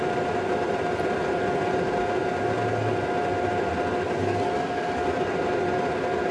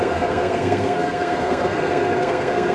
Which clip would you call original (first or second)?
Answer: first